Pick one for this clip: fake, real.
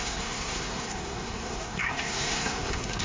fake